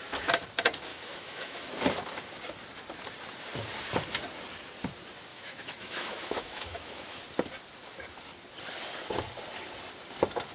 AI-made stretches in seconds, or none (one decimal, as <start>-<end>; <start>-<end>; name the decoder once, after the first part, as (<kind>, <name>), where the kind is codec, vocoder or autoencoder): 0.9-1.6 (autoencoder, DAC-VAE); 5.3-7.2